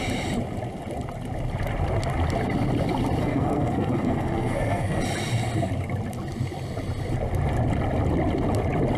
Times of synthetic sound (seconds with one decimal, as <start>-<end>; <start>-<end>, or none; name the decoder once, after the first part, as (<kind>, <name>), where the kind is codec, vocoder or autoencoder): 3.2-5.0 (codec, SNAC)